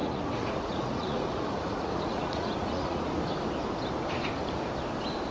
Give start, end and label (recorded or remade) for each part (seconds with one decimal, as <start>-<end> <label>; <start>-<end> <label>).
0.0-3.0 remade; 3.0-5.3 recorded